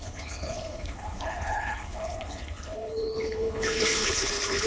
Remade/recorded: remade